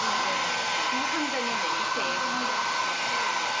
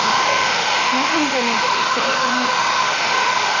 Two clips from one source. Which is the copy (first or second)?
second